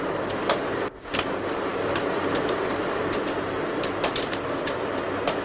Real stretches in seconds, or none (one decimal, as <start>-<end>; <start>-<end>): 0.0-1.7; 3.0-5.4